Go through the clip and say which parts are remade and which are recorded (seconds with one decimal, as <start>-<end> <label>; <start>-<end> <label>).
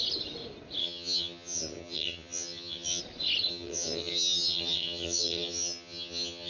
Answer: 0.0-0.8 recorded; 0.8-3.0 remade; 3.0-3.5 recorded; 3.5-6.5 remade